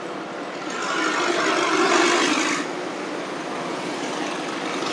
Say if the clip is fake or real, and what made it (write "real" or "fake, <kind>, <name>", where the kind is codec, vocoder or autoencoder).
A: real